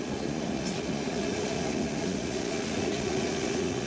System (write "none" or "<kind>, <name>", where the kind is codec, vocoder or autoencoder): vocoder, Vocos